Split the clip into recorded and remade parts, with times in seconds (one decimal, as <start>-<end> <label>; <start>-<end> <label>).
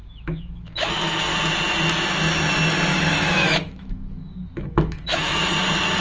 0.0-0.9 remade; 0.9-2.9 recorded; 2.9-5.5 remade; 5.5-6.0 recorded